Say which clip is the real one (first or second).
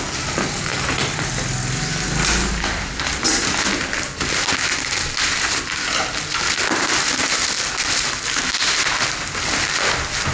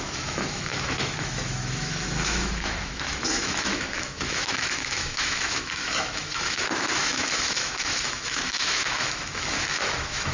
first